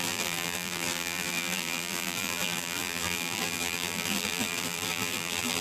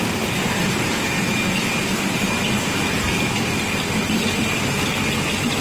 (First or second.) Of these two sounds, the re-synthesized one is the first